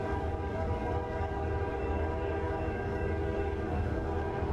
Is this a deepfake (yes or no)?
yes